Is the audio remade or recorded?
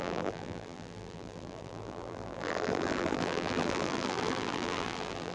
remade